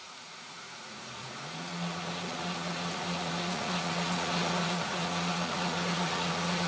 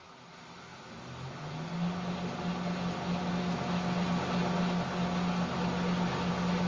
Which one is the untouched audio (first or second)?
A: second